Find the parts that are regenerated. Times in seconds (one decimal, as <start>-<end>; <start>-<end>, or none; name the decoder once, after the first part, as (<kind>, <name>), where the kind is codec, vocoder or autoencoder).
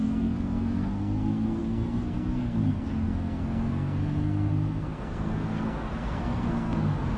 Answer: 0.0-7.2 (codec, SNAC)